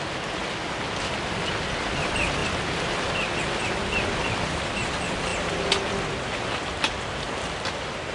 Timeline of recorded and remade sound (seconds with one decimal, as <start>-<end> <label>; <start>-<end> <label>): 0.0-8.1 recorded